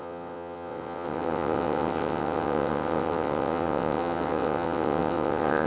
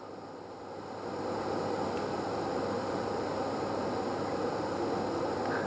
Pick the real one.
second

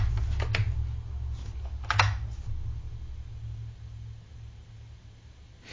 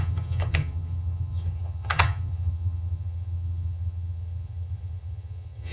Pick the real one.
first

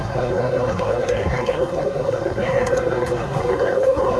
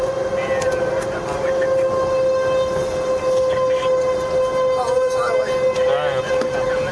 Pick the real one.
second